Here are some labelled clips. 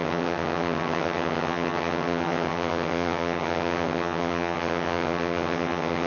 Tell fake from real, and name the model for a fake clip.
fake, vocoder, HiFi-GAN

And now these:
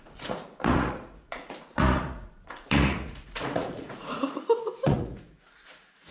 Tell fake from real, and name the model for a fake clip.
fake, vocoder, Vocos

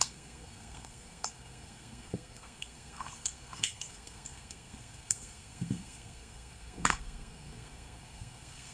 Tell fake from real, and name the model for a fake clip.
fake, codec, SNAC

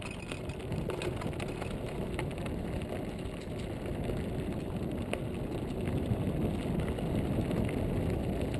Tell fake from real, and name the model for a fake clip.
real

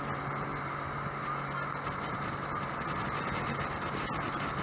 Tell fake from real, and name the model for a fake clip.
real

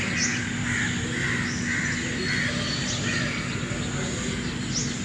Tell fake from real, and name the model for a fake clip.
real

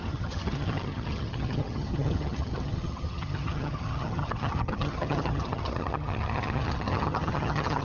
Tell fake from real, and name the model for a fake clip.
fake, vocoder, HiFi-GAN